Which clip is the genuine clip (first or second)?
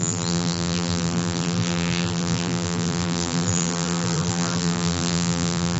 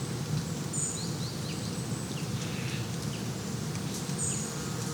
second